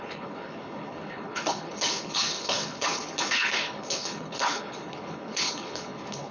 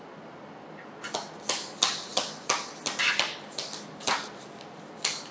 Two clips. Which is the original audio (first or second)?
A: second